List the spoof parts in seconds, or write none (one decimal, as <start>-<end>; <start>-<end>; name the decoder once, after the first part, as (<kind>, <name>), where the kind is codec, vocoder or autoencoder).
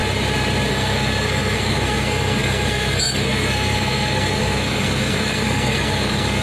0.7-6.4 (codec, SNAC)